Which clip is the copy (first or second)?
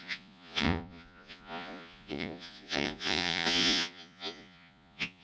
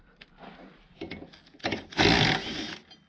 first